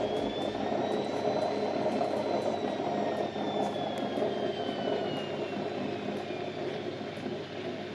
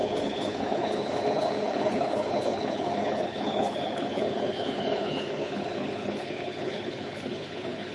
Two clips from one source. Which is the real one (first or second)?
first